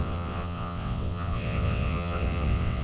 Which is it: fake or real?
fake